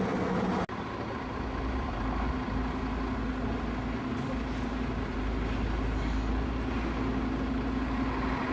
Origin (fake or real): real